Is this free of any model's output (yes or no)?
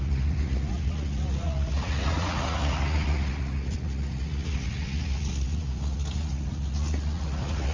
no